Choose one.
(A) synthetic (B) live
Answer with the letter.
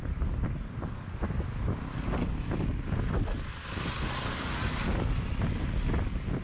B